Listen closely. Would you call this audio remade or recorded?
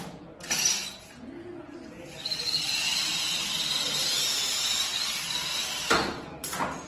recorded